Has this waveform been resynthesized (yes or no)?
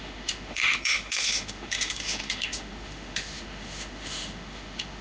yes